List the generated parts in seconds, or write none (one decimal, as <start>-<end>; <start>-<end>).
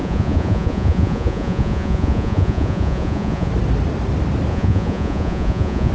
0.0-3.5; 4.5-5.9